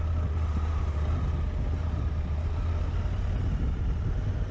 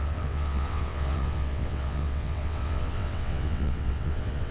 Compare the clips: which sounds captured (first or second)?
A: first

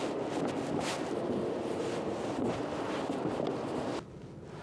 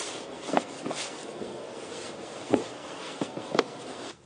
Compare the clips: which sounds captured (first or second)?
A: first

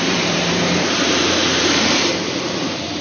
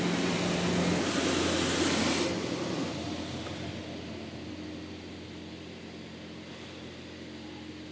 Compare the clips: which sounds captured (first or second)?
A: second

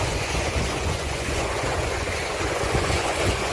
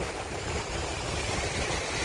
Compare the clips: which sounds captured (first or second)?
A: second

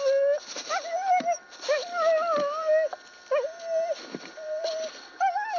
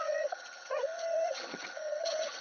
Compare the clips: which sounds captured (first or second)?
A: first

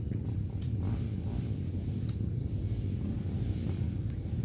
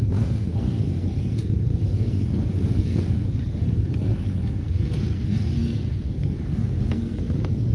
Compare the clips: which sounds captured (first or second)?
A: first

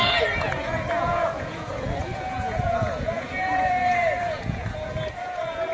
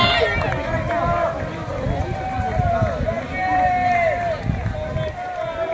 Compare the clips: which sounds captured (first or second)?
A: second